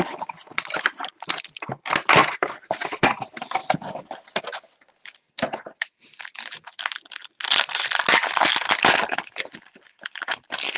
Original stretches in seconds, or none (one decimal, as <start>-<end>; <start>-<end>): 0.0-10.8